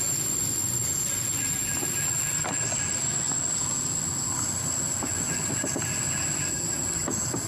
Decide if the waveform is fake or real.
real